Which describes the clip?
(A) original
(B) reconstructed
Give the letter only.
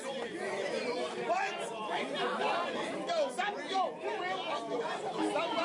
B